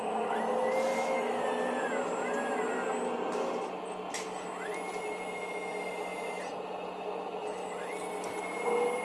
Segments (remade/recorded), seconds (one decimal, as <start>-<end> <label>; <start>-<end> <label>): 0.0-0.9 recorded; 0.9-1.4 remade; 1.4-9.0 recorded